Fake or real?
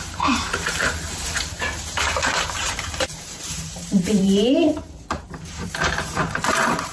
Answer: fake